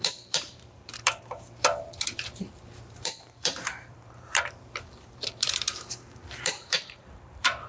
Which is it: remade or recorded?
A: remade